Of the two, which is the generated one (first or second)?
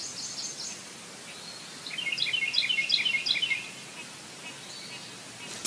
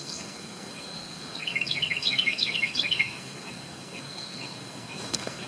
second